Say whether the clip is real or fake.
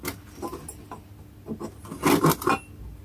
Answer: real